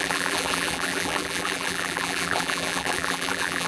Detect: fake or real fake